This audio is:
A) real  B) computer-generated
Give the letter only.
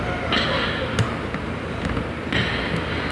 A